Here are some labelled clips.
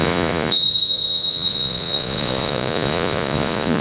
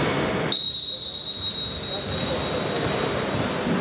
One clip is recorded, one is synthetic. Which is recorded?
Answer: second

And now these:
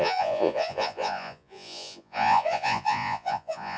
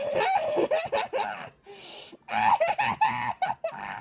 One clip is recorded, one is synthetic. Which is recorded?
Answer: second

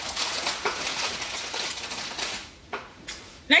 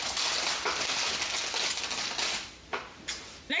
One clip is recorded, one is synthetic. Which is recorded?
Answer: second